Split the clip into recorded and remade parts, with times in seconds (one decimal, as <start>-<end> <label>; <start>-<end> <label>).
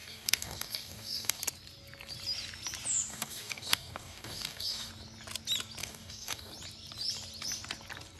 0.0-1.4 remade; 1.4-3.1 recorded; 3.1-4.9 remade; 4.9-5.8 recorded; 5.8-6.5 remade; 6.5-8.2 recorded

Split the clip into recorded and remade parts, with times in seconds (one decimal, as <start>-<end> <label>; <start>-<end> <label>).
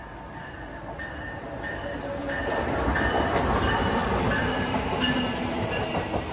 0.0-6.3 recorded